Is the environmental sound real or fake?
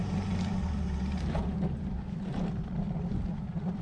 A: fake